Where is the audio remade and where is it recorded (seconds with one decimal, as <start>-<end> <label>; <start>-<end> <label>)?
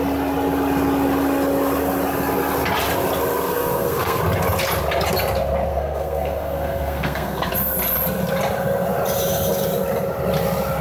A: 0.0-3.5 recorded; 3.5-4.2 remade; 4.2-5.7 recorded; 5.7-7.5 remade; 7.5-10.8 recorded